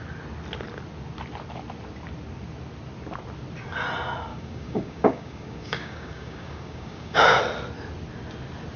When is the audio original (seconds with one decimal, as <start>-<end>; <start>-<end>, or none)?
0.0-4.3; 7.4-8.8